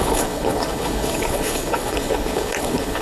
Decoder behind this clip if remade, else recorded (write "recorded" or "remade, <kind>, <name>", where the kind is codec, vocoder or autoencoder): remade, codec, HILCodec